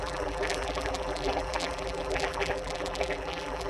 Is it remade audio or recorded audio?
remade